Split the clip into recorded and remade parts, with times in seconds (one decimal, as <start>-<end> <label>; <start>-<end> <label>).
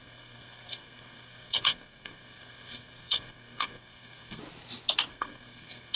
0.0-4.4 remade; 4.4-5.1 recorded; 5.1-6.0 remade